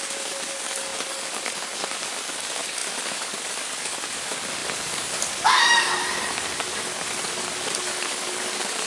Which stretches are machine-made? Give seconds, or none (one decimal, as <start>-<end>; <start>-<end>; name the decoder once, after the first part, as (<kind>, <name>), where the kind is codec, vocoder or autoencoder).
0.0-8.9 (codec, DAC)